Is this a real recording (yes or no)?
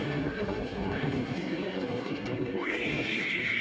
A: no